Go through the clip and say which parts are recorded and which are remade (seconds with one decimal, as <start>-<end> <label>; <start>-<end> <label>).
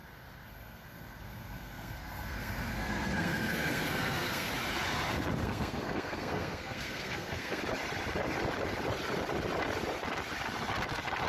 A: 0.0-4.5 remade; 4.5-5.4 recorded; 5.4-7.6 remade; 7.6-11.3 recorded